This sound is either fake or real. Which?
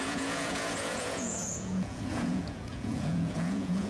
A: fake